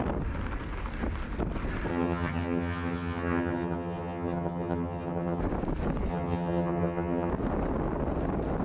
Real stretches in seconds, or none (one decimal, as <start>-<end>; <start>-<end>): 0.0-1.9; 5.4-6.1; 7.3-8.6